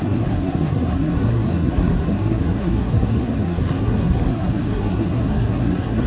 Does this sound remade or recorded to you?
remade